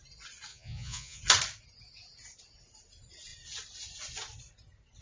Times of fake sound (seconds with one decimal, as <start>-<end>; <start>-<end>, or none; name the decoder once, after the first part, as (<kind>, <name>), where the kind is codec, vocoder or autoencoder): 0.5-1.2 (vocoder, Vocos)